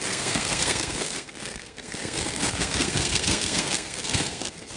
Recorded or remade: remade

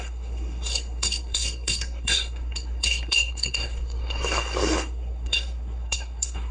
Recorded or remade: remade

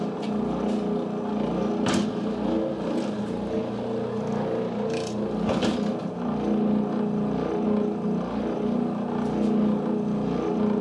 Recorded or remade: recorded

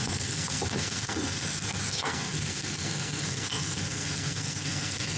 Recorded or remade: remade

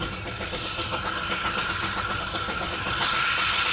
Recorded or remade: recorded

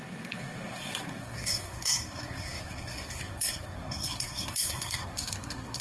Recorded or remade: remade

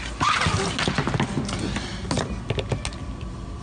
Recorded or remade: recorded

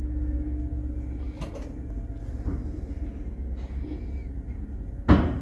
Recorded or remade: recorded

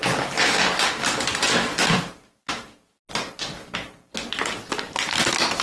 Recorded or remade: recorded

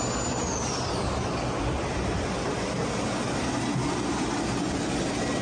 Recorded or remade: recorded